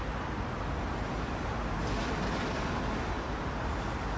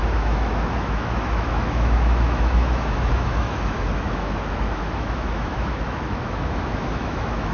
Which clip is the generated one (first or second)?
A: second